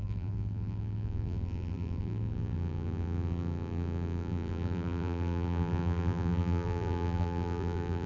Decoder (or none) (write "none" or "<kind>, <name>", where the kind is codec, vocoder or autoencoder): vocoder, BigVGAN v2